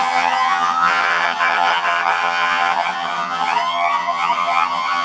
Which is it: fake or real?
fake